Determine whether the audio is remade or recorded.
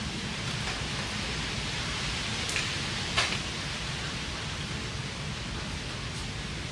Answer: recorded